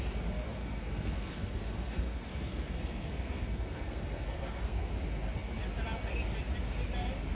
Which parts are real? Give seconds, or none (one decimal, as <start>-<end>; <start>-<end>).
0.0-0.6; 4.9-7.3